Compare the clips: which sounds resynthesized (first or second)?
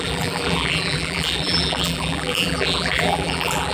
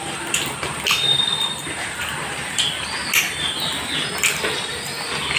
first